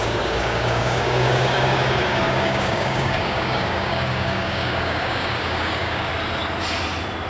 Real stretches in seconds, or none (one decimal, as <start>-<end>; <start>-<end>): 6.1-7.3

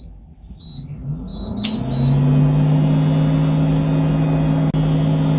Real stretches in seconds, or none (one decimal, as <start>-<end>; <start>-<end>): 0.0-5.4